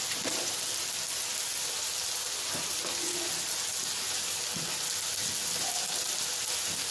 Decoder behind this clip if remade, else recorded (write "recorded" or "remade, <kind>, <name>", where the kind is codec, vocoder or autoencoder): recorded